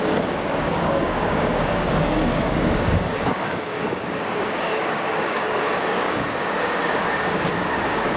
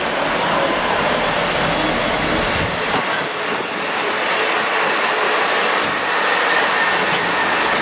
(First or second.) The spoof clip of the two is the first